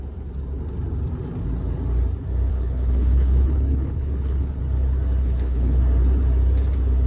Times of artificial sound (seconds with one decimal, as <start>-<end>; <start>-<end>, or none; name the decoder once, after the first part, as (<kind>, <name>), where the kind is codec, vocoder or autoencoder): 2.5-4.6 (codec, HILCodec); 5.2-5.8